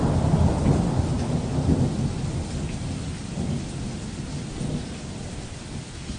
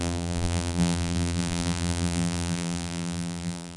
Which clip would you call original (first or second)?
first